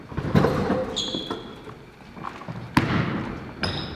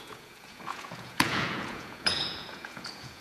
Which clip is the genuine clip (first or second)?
first